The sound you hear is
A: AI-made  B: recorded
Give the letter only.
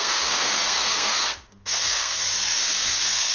A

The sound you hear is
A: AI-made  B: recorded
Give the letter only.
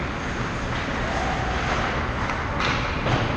B